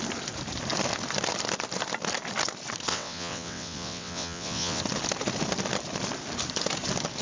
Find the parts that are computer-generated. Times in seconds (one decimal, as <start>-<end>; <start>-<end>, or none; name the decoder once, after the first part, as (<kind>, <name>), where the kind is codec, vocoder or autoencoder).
2.9-4.8 (vocoder, WaveNeXt)